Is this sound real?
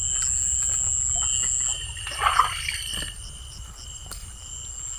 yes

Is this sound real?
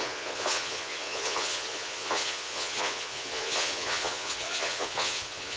no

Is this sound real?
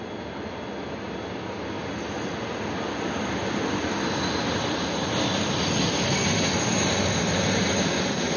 yes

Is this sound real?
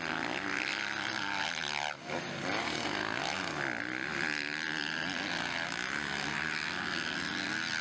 yes